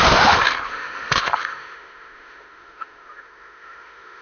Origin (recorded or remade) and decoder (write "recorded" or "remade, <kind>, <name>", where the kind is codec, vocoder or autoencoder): remade, autoencoder, DAC-VAE